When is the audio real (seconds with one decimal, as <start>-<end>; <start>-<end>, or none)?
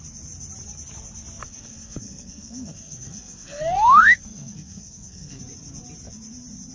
0.0-1.4; 5.4-6.7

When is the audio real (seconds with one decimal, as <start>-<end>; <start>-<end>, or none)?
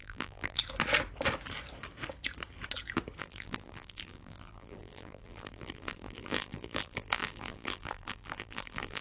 0.6-3.2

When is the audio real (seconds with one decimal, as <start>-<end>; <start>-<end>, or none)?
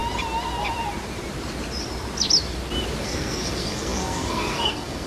0.0-3.0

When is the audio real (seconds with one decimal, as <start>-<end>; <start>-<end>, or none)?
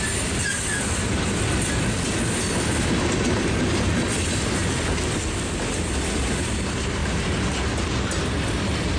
0.0-0.5; 1.6-4.6; 5.6-9.0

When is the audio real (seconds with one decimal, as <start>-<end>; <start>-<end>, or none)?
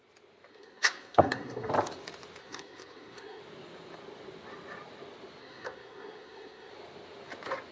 0.0-0.5; 1.7-2.4; 3.4-5.4; 6.7-7.7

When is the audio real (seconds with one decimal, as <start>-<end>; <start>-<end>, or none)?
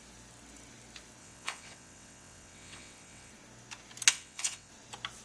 0.0-1.2; 3.3-4.1; 4.7-5.2